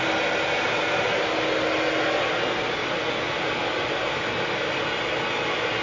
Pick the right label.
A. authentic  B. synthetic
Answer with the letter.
A